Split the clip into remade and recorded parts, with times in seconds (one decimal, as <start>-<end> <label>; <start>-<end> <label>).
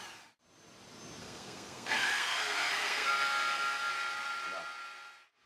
0.0-1.2 recorded; 1.2-3.9 remade; 3.9-5.5 recorded